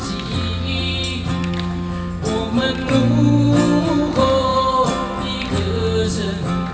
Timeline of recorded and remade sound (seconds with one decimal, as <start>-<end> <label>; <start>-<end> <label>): 0.0-6.7 recorded